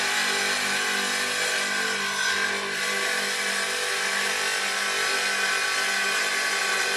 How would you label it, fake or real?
real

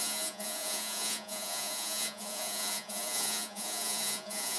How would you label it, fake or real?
fake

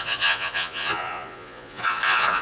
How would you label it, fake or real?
fake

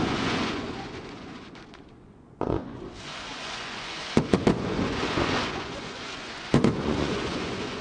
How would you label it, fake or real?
fake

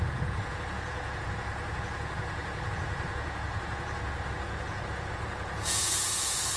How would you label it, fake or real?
fake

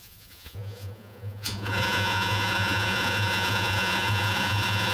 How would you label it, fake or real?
fake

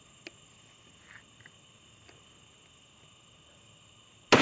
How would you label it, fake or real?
real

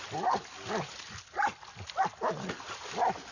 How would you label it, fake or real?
real